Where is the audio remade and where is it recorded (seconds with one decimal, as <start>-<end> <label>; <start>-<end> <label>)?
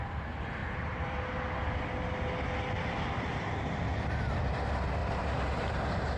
0.0-0.6 recorded; 0.6-1.3 remade; 1.3-2.8 recorded; 2.8-3.7 remade; 3.7-5.0 recorded; 5.0-6.2 remade